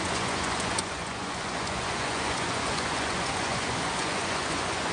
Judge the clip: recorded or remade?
remade